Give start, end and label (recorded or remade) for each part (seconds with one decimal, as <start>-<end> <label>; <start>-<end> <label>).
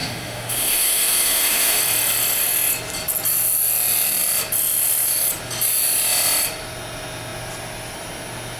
0.0-1.8 remade; 1.8-8.6 recorded